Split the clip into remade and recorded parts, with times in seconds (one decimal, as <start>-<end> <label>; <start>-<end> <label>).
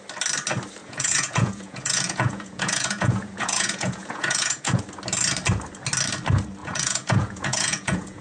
0.0-0.8 recorded; 0.8-4.8 remade; 4.8-6.6 recorded; 6.6-8.2 remade